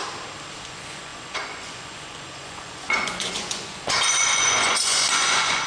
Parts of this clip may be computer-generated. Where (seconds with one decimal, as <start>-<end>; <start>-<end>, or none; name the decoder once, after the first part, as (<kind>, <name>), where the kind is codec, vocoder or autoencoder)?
0.6-5.7 (vocoder, Vocos)